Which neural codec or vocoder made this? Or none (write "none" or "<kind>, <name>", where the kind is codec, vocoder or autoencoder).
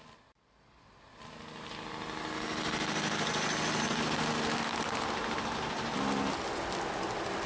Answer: none